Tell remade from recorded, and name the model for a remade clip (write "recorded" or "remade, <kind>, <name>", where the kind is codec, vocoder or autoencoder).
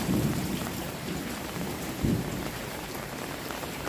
remade, vocoder, BigVGAN v2